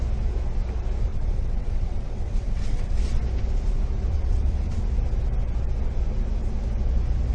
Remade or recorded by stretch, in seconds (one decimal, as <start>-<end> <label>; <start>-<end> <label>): 0.0-1.1 recorded; 1.1-3.0 remade; 3.0-4.1 recorded; 4.1-4.8 remade; 4.8-7.3 recorded